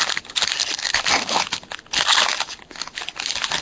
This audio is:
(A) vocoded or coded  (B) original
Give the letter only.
B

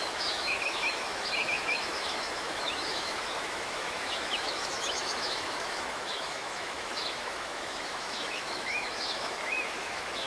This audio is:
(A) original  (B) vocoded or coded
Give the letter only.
B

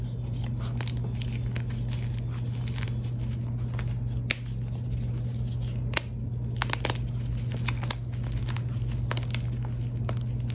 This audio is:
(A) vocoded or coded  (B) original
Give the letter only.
B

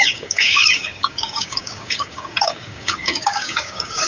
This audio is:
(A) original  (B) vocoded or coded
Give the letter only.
B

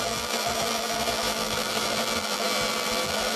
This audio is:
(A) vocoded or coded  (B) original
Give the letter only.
A